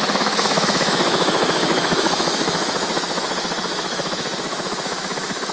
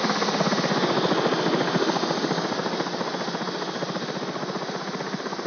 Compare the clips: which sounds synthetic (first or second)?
first